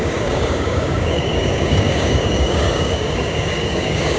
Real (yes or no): no